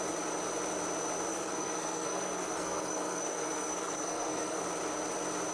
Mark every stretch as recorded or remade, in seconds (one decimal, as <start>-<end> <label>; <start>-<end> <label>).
0.0-1.3 recorded; 1.3-4.6 remade; 4.6-5.5 recorded